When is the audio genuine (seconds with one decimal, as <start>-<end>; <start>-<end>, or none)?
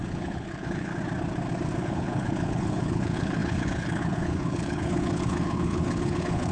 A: 0.9-1.8